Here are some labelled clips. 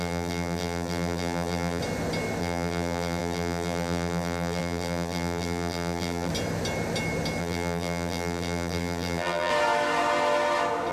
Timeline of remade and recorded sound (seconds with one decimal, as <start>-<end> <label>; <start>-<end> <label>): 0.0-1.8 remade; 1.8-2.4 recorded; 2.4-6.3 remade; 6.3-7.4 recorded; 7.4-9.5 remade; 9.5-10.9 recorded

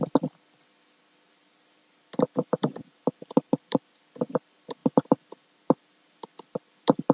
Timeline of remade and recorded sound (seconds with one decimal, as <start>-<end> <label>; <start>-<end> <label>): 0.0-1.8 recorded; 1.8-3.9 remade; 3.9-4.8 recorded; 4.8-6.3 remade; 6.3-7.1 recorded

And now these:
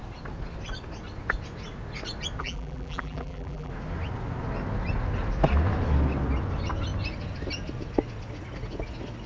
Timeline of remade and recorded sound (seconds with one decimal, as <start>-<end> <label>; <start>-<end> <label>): 0.0-2.4 recorded; 2.4-3.7 remade; 3.7-9.3 recorded

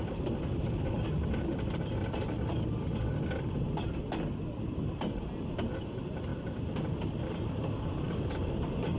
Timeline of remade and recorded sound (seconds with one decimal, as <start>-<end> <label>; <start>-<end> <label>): 0.0-6.3 recorded; 6.3-7.3 remade; 7.3-9.0 recorded

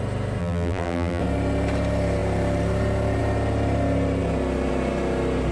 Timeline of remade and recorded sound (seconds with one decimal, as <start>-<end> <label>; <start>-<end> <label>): 0.0-0.4 recorded; 0.4-1.2 remade; 1.2-5.5 recorded